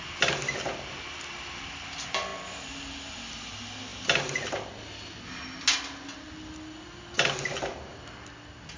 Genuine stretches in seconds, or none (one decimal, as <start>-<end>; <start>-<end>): 0.0-8.8